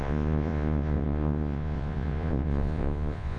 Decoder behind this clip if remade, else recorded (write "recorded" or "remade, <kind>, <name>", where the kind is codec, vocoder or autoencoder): remade, vocoder, Vocos